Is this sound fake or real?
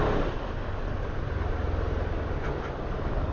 fake